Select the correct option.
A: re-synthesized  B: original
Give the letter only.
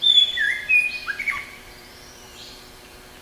A